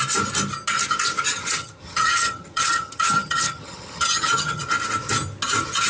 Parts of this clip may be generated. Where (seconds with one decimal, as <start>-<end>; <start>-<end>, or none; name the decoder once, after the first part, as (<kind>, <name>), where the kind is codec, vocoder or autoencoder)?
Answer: 1.3-4.6 (vocoder, HiFi-GAN)